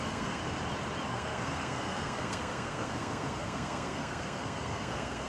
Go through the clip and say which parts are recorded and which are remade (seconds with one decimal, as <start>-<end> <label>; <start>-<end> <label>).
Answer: 0.0-0.4 remade; 0.4-1.1 recorded; 1.1-5.3 remade